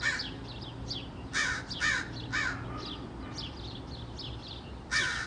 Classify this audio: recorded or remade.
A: recorded